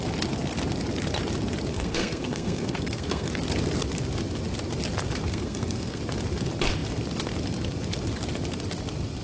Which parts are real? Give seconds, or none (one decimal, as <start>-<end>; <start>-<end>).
0.0-1.7; 3.3-5.3; 6.0-9.2